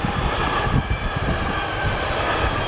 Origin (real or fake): real